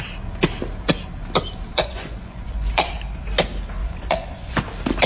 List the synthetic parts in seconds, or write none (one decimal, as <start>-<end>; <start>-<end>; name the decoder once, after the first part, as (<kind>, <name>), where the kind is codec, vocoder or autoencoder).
1.7-2.9 (vocoder, Vocos); 3.8-4.5